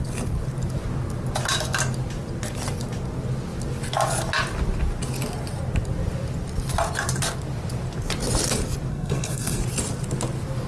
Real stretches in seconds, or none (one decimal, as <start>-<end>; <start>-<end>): 0.0-8.9; 9.6-10.7